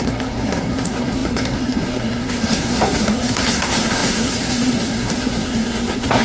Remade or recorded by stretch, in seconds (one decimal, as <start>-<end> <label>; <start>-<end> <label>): 0.0-6.2 remade